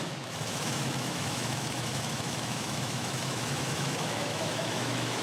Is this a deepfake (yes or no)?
yes